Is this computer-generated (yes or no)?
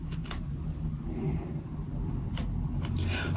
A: no